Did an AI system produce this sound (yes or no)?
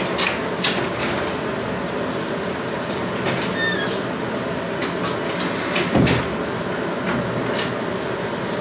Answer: no